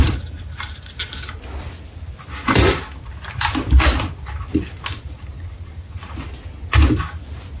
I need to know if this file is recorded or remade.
recorded